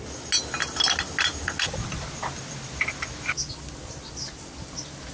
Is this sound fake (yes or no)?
no